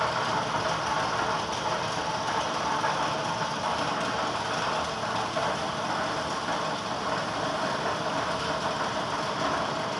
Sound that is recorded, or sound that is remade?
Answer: recorded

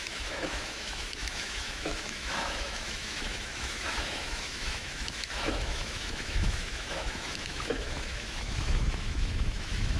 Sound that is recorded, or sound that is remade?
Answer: remade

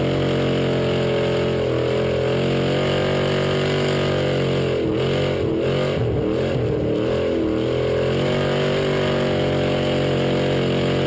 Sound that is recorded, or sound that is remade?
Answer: recorded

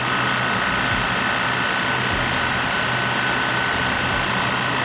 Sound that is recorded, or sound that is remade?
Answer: recorded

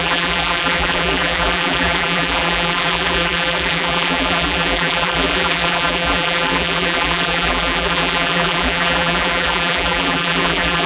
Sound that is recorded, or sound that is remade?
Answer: remade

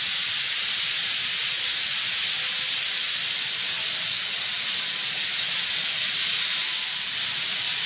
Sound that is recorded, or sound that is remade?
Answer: recorded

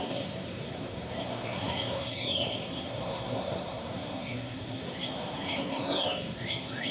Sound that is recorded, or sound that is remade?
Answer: remade